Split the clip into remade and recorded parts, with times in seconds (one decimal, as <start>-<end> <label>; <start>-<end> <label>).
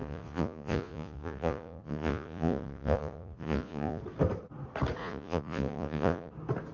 0.0-4.0 remade; 4.0-5.0 recorded; 5.0-6.3 remade; 6.3-6.7 recorded